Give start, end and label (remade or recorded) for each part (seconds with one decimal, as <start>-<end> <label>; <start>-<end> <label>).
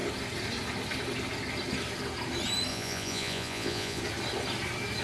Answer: 0.0-2.7 recorded; 2.7-4.0 remade; 4.0-5.0 recorded